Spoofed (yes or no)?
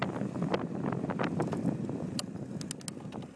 no